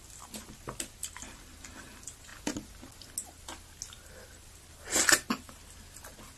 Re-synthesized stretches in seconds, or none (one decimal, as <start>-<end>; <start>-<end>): none